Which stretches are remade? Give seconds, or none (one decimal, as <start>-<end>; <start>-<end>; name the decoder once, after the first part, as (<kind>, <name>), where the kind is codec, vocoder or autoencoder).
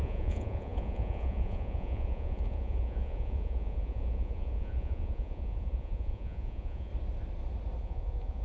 0.0-6.9 (vocoder, Vocos); 7.8-8.4